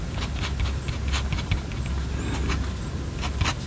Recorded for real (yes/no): yes